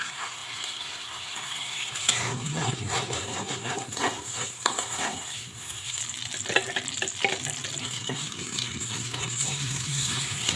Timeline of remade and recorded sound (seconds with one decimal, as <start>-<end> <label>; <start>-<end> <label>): 0.0-6.0 remade; 6.0-7.8 recorded; 7.8-10.6 remade